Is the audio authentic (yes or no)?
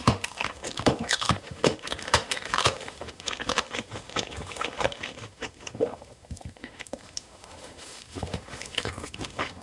no